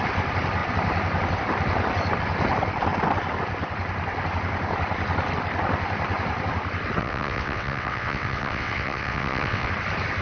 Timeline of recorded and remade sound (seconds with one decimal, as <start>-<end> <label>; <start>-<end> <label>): 0.0-7.0 recorded; 7.0-9.7 remade; 9.7-10.2 recorded